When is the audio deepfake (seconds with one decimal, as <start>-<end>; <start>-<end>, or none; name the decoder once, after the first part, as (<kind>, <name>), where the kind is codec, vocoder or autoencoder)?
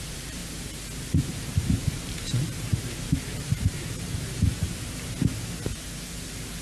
0.0-0.4 (vocoder, BigVGAN v2); 1.0-5.3